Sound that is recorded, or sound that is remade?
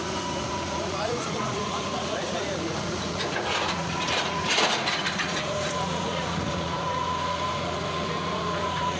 remade